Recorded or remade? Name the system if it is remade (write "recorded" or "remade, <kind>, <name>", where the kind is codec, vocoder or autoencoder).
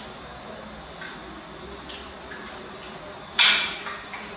recorded